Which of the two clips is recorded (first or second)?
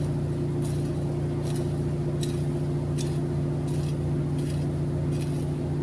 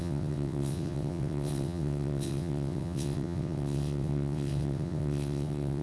first